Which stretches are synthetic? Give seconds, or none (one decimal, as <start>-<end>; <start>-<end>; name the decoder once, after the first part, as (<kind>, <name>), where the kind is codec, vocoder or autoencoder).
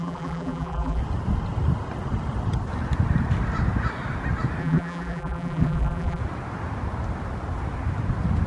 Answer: 0.0-1.0 (vocoder, BigVGAN v2); 4.6-6.2